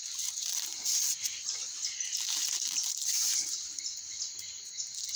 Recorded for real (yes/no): yes